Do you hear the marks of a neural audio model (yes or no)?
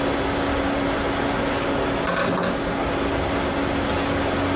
no